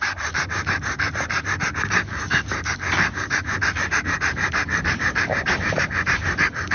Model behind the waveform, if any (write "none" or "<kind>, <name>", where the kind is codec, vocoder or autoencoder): vocoder, BigVGAN v2